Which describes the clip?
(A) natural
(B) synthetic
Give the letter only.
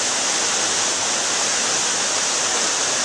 A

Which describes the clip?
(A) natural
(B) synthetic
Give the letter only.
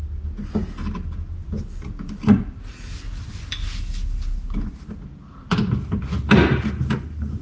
A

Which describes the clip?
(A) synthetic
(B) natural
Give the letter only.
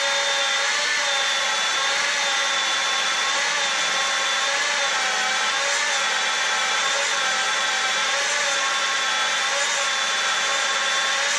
B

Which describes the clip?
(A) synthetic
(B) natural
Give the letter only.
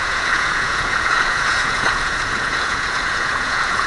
A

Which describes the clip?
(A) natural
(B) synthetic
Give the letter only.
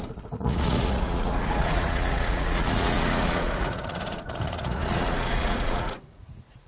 B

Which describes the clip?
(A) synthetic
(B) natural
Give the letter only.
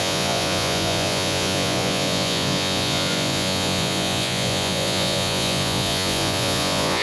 A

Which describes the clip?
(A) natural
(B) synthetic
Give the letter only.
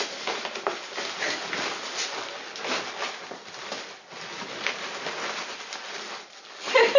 A